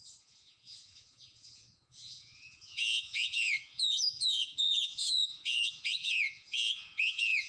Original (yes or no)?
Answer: no